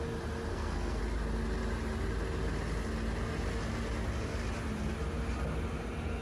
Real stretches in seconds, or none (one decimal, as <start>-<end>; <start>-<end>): 0.0-0.5; 1.0-6.2